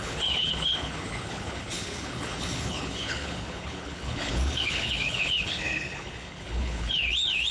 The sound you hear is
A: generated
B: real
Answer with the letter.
A